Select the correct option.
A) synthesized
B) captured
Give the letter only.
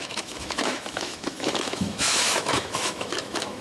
A